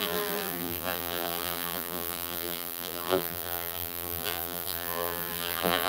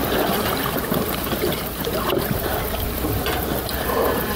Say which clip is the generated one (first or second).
first